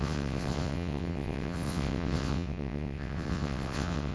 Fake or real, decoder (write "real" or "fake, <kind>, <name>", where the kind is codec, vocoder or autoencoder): fake, vocoder, WaveNeXt